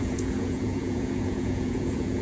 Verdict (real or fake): fake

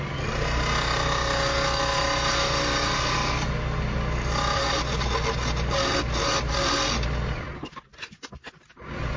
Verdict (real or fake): real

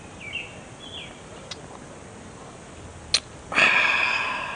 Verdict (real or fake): real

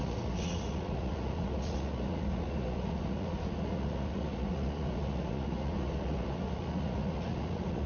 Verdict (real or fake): fake